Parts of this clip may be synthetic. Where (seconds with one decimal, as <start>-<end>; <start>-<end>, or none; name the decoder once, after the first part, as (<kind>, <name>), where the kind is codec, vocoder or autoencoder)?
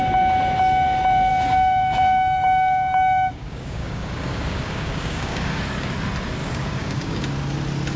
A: 1.3-5.6 (codec, DAC); 6.4-7.2